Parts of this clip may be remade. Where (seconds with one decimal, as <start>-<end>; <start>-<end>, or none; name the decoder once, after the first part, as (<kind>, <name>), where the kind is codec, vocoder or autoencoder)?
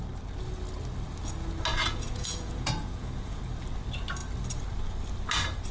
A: 1.7-3.4 (vocoder, Vocos)